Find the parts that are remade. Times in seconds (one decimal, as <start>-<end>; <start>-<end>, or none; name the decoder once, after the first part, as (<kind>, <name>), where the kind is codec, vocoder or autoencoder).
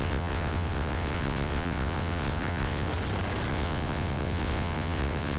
0.0-2.9 (vocoder, WaveNeXt); 3.5-5.4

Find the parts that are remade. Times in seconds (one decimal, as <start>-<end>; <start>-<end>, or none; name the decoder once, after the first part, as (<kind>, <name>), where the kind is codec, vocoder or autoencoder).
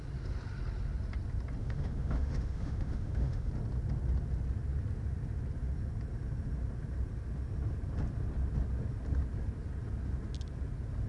1.6-3.5 (autoencoder, DAC-VAE)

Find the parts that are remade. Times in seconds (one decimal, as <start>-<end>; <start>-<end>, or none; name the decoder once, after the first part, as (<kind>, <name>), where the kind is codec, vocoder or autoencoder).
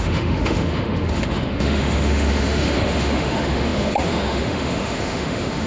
0.0-5.7 (autoencoder, DAC-VAE)